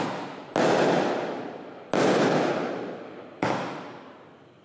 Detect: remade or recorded recorded